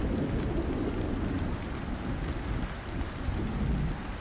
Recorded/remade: recorded